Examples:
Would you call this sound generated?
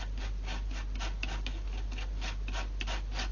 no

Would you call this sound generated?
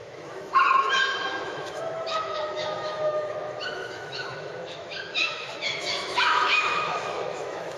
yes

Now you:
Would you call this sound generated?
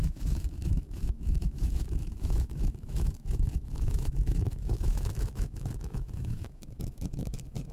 yes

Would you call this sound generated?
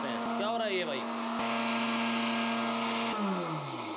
no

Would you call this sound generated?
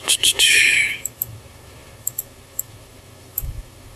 yes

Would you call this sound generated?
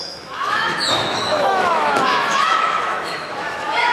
yes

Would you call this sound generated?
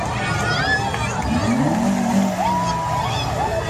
no